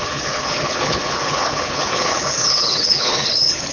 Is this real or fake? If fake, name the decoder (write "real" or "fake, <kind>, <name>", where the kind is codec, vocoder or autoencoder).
fake, codec, HILCodec